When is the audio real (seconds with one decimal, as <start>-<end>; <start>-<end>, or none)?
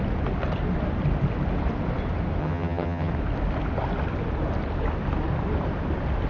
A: 0.0-2.4; 3.1-6.3